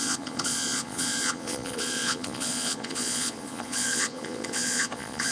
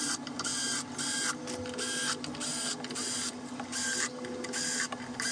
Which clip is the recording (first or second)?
second